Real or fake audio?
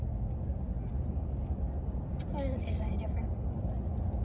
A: real